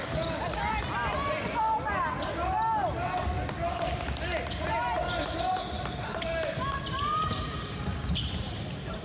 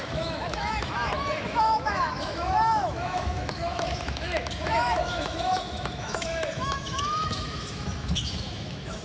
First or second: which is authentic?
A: first